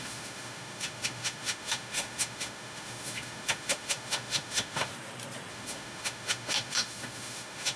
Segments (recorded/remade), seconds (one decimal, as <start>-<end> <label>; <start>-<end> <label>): 0.0-4.9 remade; 4.9-5.5 recorded; 5.5-7.8 remade